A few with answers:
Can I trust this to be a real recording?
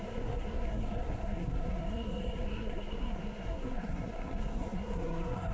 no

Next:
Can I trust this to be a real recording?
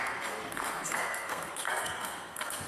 no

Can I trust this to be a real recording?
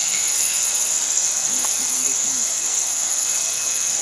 no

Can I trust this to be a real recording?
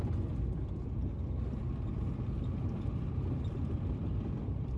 yes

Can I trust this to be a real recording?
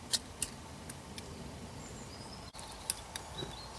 yes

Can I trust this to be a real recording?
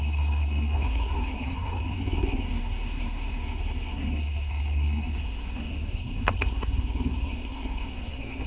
no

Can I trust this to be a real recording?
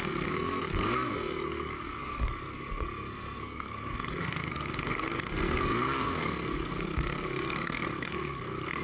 no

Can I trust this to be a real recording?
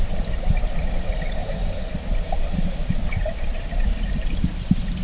yes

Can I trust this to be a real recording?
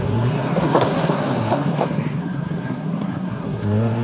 no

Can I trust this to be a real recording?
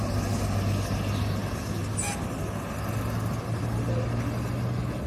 yes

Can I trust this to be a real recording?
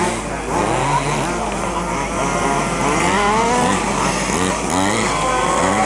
yes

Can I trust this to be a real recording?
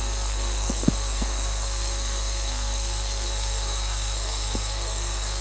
no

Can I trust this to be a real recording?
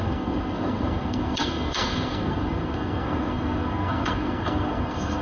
no